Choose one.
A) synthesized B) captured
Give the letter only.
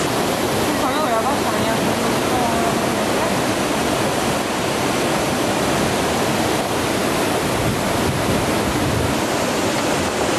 B